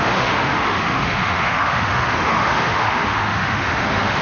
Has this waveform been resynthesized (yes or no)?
yes